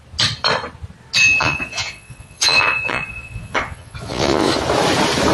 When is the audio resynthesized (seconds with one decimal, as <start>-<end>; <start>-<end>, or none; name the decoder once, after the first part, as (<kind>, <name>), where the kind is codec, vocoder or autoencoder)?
1.4-4.6 (vocoder, Vocos)